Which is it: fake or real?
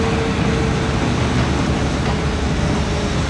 real